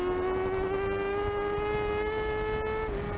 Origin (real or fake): real